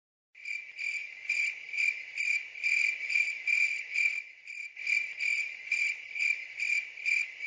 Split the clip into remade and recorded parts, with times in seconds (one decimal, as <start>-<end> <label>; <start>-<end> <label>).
0.0-7.5 recorded